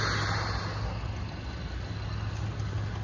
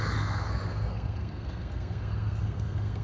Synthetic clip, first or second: second